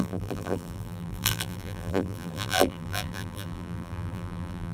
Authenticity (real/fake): fake